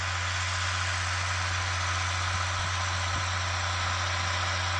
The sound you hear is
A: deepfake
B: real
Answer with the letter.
B